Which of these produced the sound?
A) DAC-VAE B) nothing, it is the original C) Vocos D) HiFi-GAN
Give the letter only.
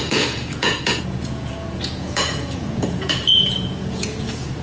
C